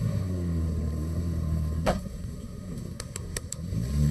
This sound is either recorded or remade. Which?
remade